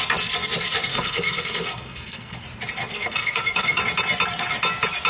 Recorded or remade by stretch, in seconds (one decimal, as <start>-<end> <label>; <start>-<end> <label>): 0.0-0.9 recorded; 0.9-2.4 remade; 2.4-2.9 recorded; 2.9-3.8 remade; 3.8-5.1 recorded